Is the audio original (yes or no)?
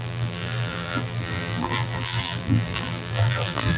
no